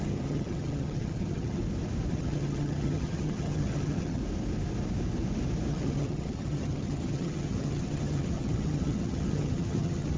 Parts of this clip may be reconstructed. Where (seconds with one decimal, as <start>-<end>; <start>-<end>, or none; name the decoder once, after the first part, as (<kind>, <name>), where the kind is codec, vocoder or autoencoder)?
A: 0.0-1.6 (vocoder, HiFi-GAN); 2.1-4.2; 5.7-10.2

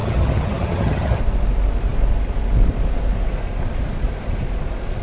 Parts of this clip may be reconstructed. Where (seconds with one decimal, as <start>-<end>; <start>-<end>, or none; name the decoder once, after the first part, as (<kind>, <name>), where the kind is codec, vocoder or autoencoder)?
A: 0.0-1.2 (vocoder, HiFi-GAN)

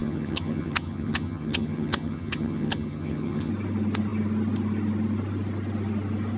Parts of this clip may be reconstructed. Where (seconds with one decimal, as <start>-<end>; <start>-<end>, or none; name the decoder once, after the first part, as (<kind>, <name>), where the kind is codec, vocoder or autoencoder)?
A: 0.0-3.5 (vocoder, HiFi-GAN)